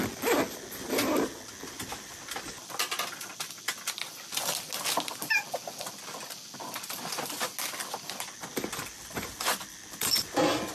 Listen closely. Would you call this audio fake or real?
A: real